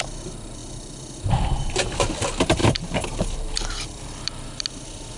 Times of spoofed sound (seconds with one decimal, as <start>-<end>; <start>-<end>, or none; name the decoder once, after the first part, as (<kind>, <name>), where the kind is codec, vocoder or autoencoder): 2.6-4.6 (vocoder, BigVGAN v2)